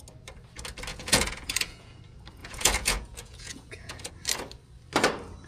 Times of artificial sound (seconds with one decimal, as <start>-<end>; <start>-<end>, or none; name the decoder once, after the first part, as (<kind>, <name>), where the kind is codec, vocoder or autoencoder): 0.9-2.0 (vocoder, Vocos); 2.4-4.1